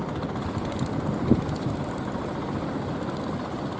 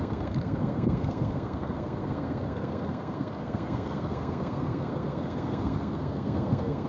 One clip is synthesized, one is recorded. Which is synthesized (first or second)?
second